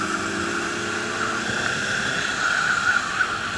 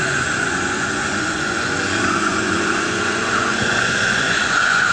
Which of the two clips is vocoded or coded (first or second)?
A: second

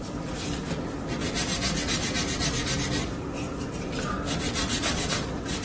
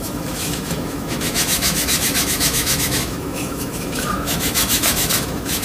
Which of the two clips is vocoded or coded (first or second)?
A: second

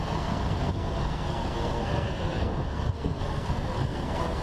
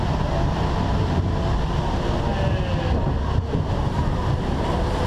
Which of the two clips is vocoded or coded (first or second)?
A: first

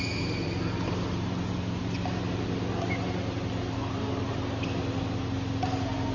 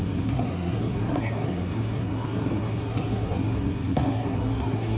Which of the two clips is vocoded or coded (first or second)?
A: second